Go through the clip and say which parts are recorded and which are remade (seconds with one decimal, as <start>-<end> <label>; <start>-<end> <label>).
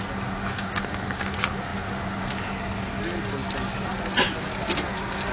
0.0-5.3 recorded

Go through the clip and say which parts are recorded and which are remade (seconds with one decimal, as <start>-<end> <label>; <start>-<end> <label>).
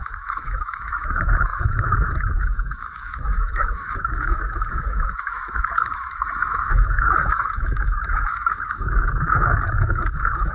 0.0-10.5 remade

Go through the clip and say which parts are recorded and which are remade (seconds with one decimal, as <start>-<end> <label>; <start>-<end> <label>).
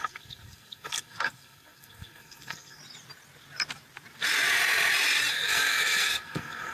0.0-2.8 remade; 2.8-5.3 recorded; 5.3-6.7 remade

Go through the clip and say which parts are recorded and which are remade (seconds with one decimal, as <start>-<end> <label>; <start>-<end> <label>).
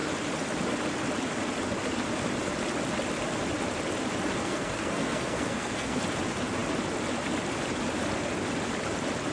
0.0-4.4 recorded; 4.4-6.0 remade; 6.0-9.3 recorded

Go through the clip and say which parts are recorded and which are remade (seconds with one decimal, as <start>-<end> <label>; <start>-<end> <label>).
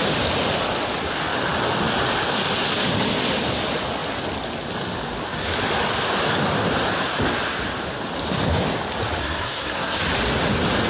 0.0-9.2 recorded; 9.2-10.0 remade; 10.0-10.9 recorded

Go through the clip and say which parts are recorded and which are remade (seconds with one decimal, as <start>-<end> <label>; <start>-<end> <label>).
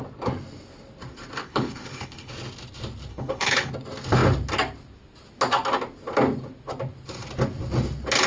0.0-1.4 recorded; 1.4-2.3 remade; 2.3-3.1 recorded; 3.1-3.7 remade; 3.7-8.3 recorded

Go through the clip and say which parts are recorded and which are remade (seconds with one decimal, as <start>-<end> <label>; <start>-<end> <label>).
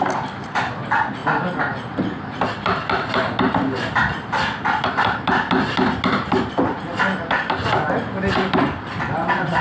0.0-9.6 recorded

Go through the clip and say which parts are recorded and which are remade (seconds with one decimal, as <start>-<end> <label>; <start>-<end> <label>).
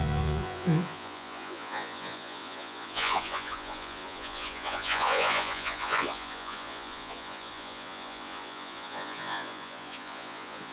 0.0-10.7 remade